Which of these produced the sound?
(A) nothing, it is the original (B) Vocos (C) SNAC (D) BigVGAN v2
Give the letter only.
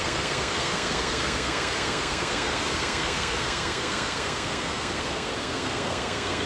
C